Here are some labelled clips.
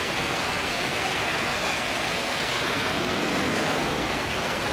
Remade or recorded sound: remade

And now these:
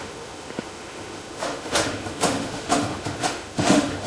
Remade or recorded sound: remade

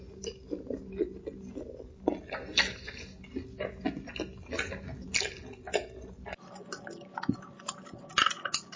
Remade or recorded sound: recorded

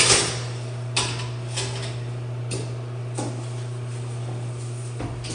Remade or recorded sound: recorded